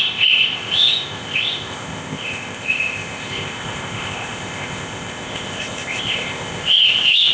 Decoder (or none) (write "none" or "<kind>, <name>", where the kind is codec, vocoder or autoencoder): codec, ZipCodec